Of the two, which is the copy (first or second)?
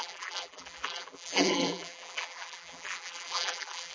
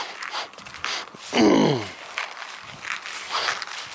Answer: first